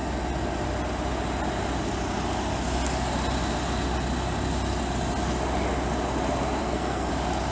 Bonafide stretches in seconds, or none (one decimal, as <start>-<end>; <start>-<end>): 0.0-6.6; 7.1-7.5